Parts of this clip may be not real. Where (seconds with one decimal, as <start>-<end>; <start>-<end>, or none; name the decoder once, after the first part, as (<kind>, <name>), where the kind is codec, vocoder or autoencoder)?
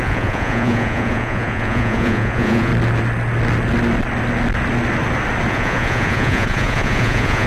0.0-2.7 (vocoder, Vocos); 5.5-7.5